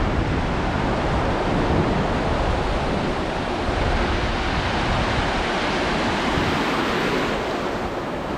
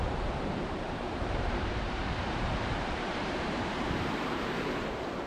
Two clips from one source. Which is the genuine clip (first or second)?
first